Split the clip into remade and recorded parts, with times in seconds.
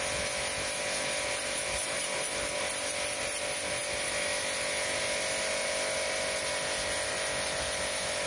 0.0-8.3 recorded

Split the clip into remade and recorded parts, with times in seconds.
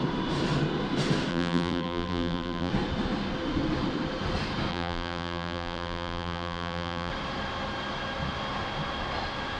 0.0-1.3 recorded; 1.3-2.7 remade; 2.7-4.7 recorded; 4.7-7.1 remade; 7.1-9.6 recorded